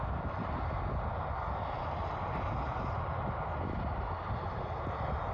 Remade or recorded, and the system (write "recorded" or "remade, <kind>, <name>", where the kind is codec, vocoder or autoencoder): recorded